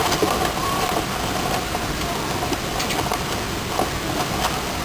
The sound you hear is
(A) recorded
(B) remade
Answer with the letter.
A